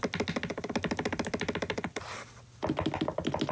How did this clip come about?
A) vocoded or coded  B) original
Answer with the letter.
B